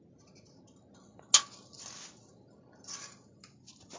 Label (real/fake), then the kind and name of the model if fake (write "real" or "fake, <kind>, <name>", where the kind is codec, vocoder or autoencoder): real